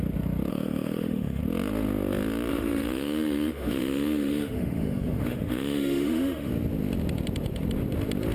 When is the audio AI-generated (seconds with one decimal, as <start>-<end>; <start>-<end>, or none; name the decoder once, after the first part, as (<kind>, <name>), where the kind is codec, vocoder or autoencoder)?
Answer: 0.5-1.4 (autoencoder, DAC-VAE); 2.5-6.5